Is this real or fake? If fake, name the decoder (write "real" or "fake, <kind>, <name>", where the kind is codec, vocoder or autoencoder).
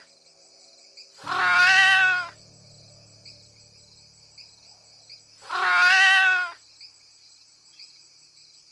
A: real